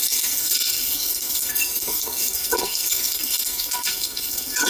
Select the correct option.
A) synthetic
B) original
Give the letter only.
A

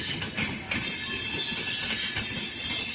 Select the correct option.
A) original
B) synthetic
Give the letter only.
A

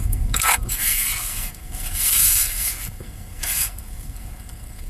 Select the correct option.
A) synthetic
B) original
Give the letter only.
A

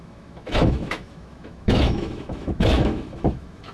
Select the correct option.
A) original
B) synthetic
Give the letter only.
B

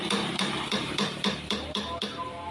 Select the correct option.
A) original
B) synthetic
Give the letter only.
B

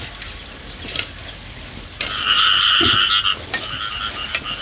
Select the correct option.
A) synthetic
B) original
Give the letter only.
B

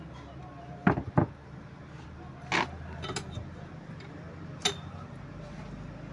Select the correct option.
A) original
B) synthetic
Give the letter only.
A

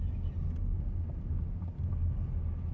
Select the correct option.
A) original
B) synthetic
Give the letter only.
A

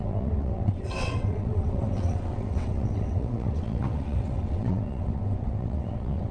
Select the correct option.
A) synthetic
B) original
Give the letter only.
A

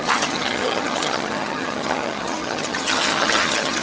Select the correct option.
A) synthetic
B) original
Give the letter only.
A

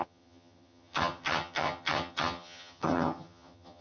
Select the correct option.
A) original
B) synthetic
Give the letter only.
B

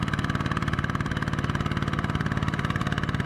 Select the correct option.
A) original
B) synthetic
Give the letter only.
B